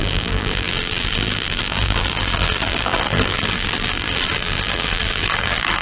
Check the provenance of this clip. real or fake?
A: fake